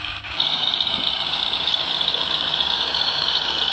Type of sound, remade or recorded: remade